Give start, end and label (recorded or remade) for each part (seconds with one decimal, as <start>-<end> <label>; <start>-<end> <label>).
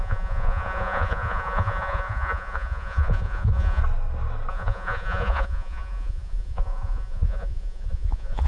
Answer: 0.0-3.8 remade; 3.8-4.5 recorded; 4.5-8.5 remade